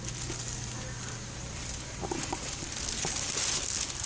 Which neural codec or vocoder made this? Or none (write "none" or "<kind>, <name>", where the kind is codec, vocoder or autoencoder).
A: none